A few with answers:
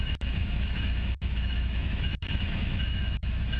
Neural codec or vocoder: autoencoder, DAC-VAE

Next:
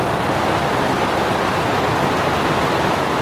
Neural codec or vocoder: none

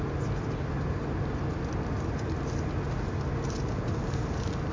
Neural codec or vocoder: none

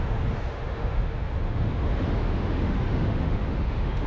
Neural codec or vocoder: autoencoder, DAC-VAE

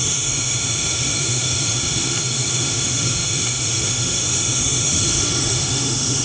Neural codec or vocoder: autoencoder, DAC-VAE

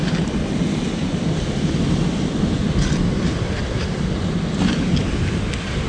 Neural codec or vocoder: none